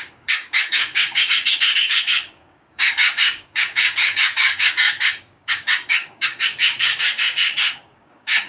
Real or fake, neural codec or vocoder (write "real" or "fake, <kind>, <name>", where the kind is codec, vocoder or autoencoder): fake, codec, DAC